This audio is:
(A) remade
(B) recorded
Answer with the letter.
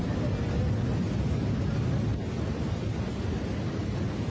B